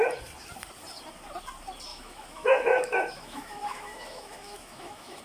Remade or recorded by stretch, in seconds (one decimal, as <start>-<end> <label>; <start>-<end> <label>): 0.0-1.9 recorded; 1.9-5.2 remade